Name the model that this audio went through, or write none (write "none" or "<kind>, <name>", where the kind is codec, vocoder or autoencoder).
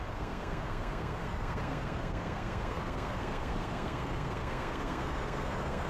codec, SNAC